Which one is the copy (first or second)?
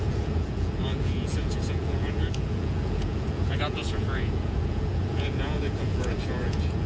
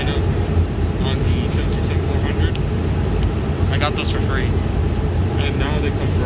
first